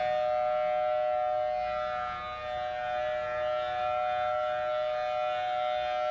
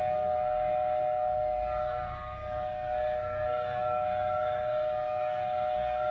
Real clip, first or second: first